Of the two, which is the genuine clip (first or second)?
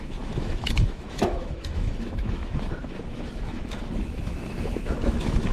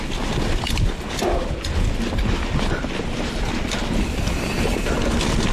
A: second